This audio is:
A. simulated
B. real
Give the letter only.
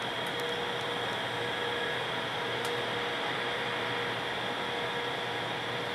B